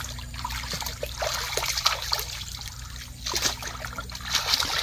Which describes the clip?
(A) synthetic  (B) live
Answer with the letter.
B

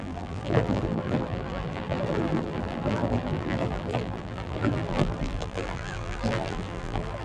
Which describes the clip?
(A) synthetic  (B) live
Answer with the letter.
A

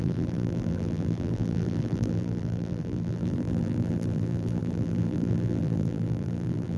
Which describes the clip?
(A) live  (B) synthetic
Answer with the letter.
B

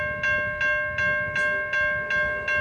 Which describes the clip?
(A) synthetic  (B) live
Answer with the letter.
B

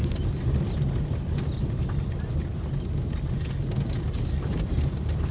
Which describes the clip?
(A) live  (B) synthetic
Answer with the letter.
A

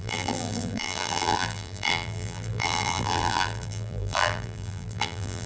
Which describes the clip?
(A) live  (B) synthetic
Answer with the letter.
B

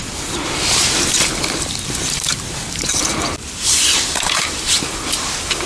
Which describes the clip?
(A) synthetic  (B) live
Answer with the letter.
A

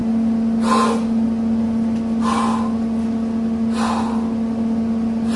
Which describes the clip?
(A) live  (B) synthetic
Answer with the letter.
A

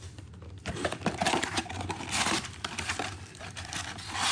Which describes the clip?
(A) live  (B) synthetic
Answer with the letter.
B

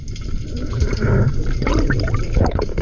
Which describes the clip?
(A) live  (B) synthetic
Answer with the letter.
B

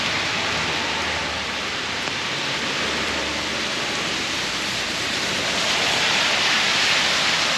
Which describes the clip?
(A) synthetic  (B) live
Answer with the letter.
A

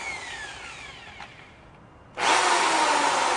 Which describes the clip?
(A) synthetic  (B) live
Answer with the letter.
B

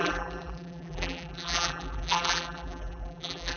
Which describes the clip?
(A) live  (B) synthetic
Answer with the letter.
B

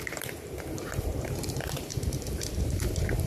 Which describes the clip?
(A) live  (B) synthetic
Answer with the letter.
B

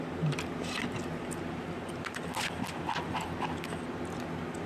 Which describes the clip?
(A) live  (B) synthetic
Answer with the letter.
A